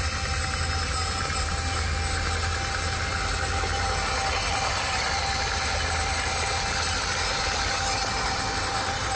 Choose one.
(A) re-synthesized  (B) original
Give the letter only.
B